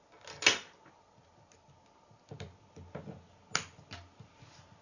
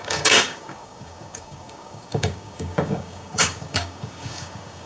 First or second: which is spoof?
second